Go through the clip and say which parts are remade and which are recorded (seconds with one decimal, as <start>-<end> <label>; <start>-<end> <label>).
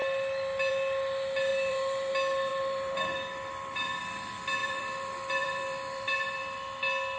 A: 0.0-1.5 recorded; 1.5-2.1 remade; 2.1-2.5 recorded; 2.5-4.0 remade; 4.0-4.6 recorded; 4.6-6.4 remade; 6.4-7.2 recorded